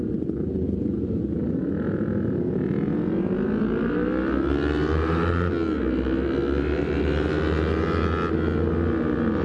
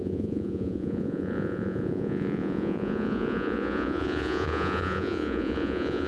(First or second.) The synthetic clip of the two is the second